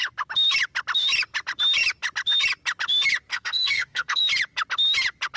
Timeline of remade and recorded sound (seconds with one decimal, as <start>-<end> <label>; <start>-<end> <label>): 0.0-3.3 recorded; 3.3-4.2 remade; 4.2-5.4 recorded